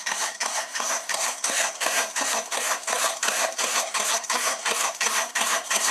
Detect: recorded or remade remade